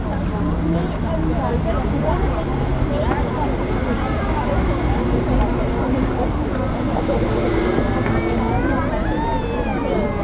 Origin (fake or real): real